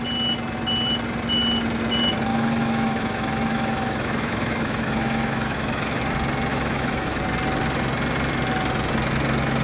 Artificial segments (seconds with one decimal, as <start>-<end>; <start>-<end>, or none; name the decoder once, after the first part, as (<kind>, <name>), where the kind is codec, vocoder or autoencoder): 2.3-6.0 (autoencoder, DAC-VAE); 6.5-7.2